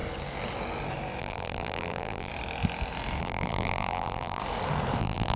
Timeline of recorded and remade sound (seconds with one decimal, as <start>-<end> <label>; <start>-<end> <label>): 0.0-1.2 recorded; 1.2-2.3 remade; 2.3-3.2 recorded; 3.2-4.4 remade; 4.4-5.0 recorded; 5.0-5.4 remade